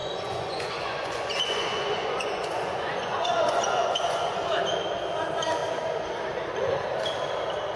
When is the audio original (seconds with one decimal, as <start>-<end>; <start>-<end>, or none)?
4.6-7.8